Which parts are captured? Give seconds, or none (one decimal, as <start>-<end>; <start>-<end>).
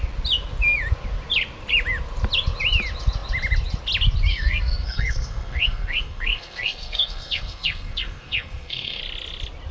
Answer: 0.0-4.3; 9.0-9.7